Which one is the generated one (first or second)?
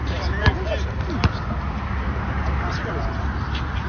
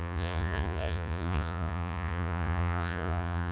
second